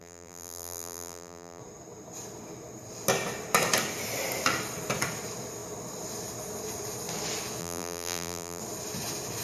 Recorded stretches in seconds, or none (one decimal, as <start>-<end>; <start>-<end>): 1.6-7.6; 8.6-9.4

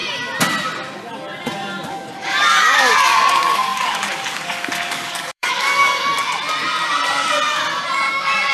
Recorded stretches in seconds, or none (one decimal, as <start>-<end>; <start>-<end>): 0.0-1.9; 6.1-8.1

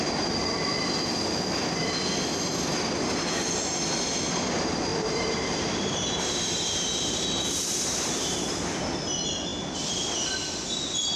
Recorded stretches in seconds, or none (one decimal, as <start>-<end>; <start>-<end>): 0.0-4.9; 8.4-11.2

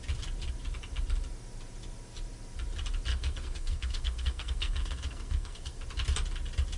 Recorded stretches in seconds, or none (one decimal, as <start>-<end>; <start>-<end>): 0.0-3.1; 5.8-6.8

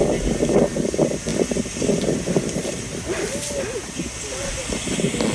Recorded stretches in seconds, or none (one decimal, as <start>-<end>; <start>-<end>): 0.0-5.3

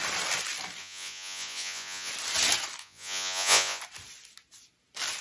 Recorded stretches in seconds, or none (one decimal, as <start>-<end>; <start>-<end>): 0.0-0.8; 2.1-2.8; 3.8-5.2

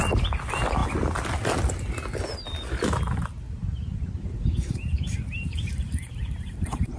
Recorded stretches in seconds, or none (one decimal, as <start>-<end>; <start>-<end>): 0.0-3.6

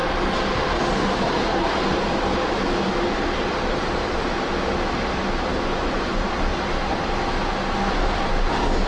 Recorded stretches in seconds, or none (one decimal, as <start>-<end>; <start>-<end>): 0.0-5.6; 6.2-8.9